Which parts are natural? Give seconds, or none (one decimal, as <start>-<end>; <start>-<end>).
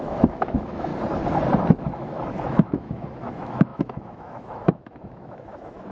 0.9-1.8